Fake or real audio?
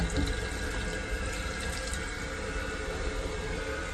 real